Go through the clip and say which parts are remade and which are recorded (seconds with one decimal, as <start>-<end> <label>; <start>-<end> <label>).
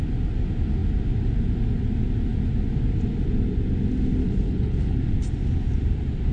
0.0-4.2 recorded; 4.2-5.0 remade; 5.0-6.3 recorded